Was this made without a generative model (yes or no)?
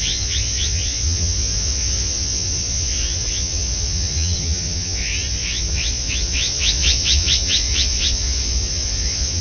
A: no